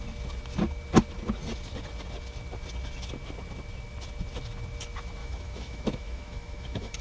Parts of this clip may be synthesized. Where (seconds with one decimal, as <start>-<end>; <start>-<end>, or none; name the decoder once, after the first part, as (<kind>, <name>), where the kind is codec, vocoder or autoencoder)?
5.2-7.0 (autoencoder, DAC-VAE)